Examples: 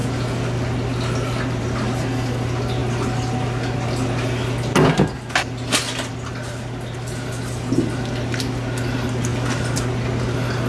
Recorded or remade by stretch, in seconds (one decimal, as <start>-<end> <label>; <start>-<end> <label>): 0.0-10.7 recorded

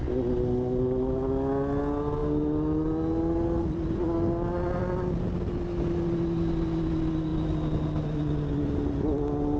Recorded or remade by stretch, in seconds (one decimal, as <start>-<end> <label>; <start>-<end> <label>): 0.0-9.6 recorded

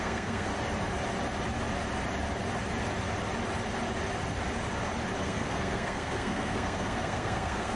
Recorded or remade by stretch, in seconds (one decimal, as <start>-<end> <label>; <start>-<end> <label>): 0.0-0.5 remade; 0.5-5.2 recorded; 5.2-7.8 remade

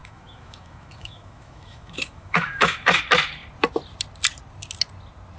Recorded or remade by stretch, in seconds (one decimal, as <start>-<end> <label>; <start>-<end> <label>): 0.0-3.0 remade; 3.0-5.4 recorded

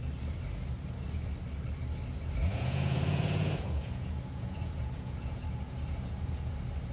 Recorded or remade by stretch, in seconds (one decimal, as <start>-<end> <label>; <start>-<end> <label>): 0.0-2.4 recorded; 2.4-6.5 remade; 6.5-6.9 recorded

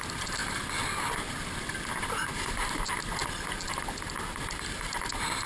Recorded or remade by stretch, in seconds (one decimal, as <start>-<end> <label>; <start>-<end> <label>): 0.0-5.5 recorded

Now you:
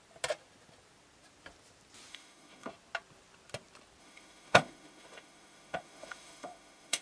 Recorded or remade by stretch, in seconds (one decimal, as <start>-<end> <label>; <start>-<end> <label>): 0.0-2.1 recorded; 2.1-2.7 remade; 2.7-4.0 recorded; 4.0-7.0 remade